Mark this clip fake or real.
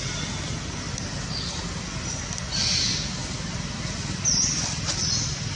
real